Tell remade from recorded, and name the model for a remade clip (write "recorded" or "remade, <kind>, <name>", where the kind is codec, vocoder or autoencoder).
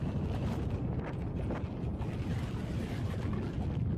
recorded